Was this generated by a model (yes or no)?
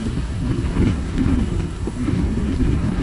yes